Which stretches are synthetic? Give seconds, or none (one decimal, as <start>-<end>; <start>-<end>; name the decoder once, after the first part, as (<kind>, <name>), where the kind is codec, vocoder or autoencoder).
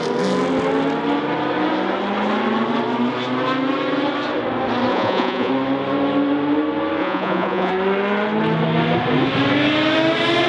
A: 4.9-5.5 (vocoder, Vocos); 7.0-7.7